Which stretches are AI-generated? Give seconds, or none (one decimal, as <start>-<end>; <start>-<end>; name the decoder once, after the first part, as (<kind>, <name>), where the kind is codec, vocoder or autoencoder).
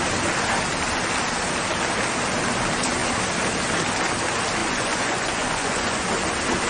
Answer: 4.6-6.1 (vocoder, Vocos)